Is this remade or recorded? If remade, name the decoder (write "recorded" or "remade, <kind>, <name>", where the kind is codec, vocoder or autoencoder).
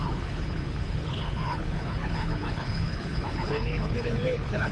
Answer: remade, codec, HILCodec